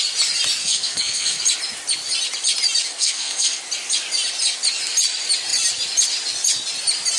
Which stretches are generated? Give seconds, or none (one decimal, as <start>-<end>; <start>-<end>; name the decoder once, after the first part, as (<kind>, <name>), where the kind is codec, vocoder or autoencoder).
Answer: 0.6-1.4 (codec, SNAC); 2.9-3.6